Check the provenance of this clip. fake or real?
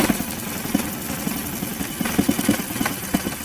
real